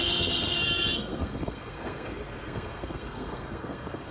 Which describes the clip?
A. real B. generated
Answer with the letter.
B